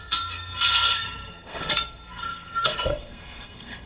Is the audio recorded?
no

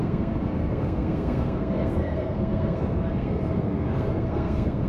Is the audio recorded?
no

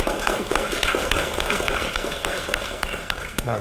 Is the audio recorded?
no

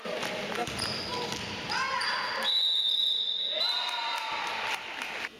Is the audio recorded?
yes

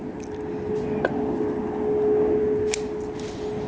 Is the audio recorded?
yes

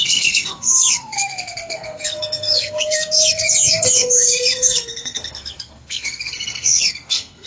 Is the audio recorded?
no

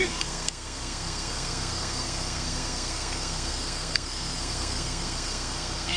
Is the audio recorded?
no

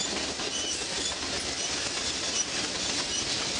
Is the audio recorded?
yes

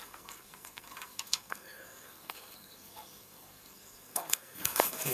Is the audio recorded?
no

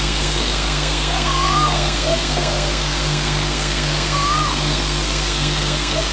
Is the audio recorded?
no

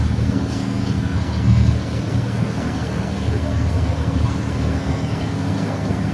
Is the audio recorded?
no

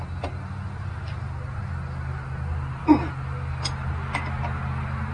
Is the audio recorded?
yes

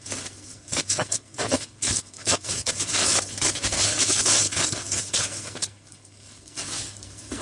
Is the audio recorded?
no